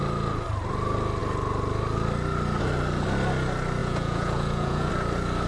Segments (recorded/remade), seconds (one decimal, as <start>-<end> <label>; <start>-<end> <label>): 0.0-3.8 recorded; 3.8-4.9 remade; 4.9-5.5 recorded